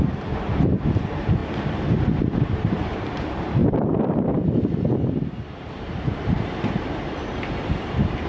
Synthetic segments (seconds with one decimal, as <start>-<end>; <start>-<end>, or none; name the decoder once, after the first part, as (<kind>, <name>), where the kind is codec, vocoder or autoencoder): 0.0-1.4 (vocoder, BigVGAN v2); 2.4-3.6; 5.5-8.3